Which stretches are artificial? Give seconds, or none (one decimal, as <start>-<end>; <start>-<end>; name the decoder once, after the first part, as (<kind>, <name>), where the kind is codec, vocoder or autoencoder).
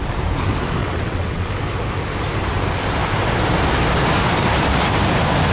0.8-1.5 (vocoder, WaveNeXt)